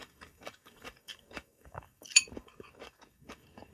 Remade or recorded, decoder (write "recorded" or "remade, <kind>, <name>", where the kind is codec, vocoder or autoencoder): remade, codec, DAC